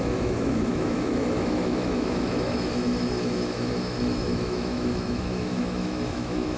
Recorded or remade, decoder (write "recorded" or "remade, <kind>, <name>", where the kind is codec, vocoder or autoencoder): remade, autoencoder, DAC-VAE